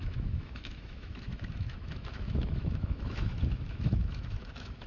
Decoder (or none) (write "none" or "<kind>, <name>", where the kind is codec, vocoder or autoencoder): autoencoder, DAC-VAE